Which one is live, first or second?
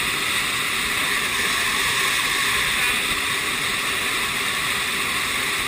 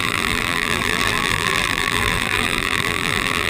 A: first